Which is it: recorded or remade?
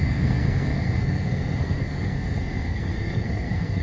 remade